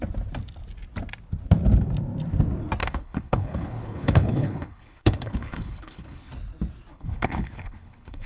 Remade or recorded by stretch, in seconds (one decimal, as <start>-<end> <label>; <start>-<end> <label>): 0.0-2.8 recorded; 2.8-6.3 remade; 6.3-6.9 recorded; 6.9-8.3 remade